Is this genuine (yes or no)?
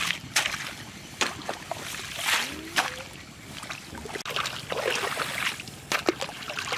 yes